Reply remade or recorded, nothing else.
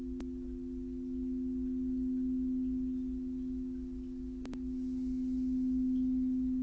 recorded